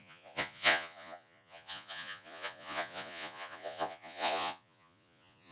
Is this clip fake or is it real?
fake